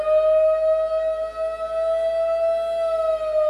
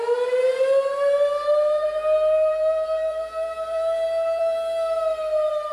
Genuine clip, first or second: first